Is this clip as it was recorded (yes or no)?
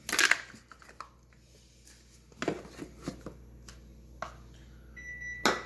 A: yes